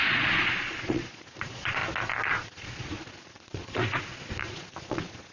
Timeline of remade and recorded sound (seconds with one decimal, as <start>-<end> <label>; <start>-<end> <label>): 0.0-1.8 remade; 1.8-2.3 recorded; 2.3-5.3 remade